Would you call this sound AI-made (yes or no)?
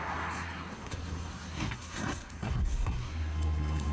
yes